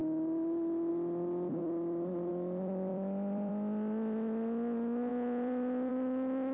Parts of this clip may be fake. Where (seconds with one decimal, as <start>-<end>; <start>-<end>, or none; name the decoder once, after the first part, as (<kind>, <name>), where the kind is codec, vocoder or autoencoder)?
1.6-2.3 (vocoder, BigVGAN v2); 2.9-3.5; 5.1-5.9